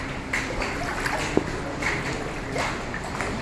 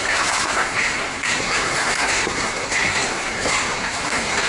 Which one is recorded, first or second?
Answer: first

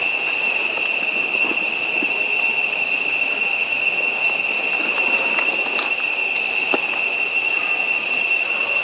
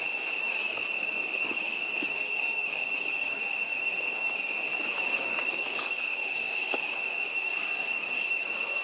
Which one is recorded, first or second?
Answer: first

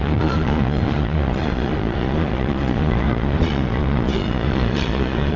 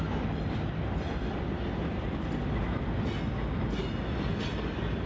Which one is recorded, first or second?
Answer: second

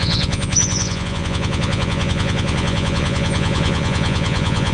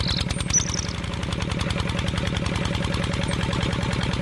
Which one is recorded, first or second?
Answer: second